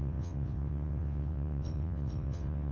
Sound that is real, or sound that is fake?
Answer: fake